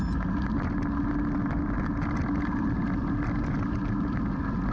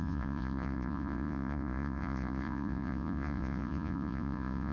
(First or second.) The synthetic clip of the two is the second